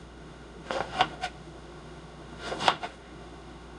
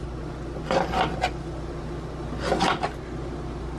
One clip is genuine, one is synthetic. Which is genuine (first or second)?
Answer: second